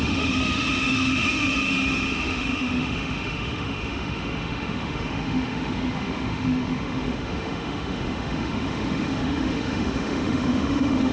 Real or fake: fake